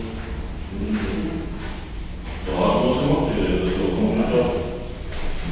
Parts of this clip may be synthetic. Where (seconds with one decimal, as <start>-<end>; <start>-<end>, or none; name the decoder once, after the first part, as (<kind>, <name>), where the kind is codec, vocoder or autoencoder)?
none